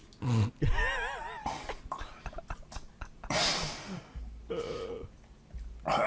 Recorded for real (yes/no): yes